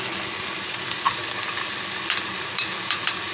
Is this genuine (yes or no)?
yes